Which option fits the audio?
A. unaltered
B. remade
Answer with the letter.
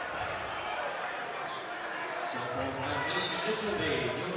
A